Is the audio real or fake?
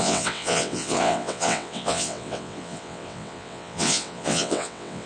fake